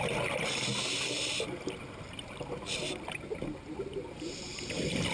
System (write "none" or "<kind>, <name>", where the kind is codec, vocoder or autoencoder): none